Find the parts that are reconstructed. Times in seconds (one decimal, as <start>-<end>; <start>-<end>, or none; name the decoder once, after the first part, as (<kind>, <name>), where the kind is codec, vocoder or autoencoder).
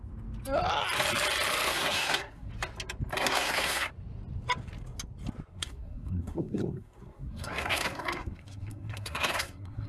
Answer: 1.7-2.5 (codec, SNAC); 3.1-3.9; 5.5-9.9